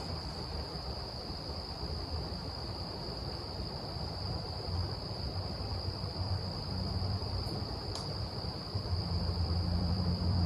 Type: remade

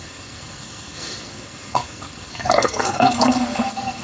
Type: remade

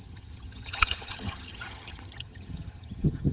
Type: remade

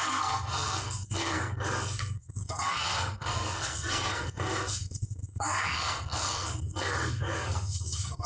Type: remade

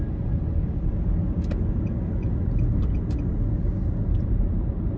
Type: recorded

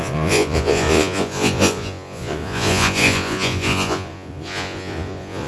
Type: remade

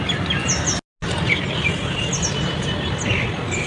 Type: recorded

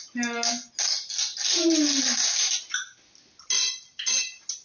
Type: recorded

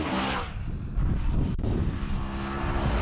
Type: remade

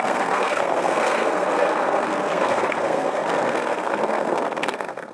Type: remade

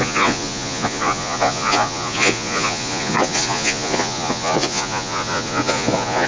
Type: remade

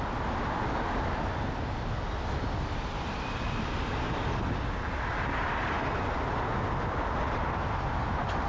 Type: recorded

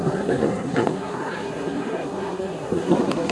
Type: remade